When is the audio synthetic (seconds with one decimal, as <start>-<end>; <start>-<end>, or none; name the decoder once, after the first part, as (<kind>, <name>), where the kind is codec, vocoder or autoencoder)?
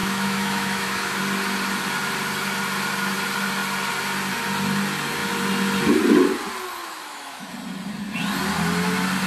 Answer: 0.0-1.2 (autoencoder, DAC-VAE); 6.8-7.5